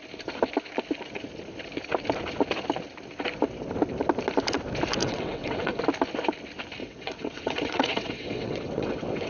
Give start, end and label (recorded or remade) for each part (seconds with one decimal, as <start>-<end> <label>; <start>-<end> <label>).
0.0-5.0 recorded; 5.0-5.8 remade; 5.8-6.8 recorded; 6.8-9.3 remade